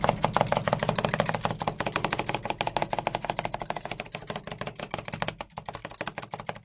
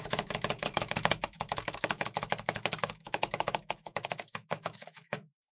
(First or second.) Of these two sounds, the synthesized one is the second